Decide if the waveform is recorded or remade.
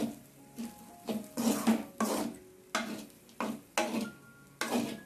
recorded